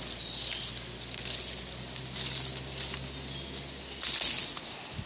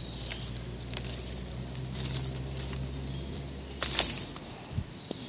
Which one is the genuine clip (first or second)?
first